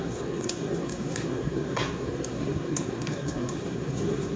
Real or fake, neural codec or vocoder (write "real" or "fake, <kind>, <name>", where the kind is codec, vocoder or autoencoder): fake, codec, SNAC